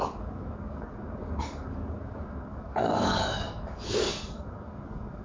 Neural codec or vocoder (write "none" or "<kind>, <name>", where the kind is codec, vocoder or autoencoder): codec, DAC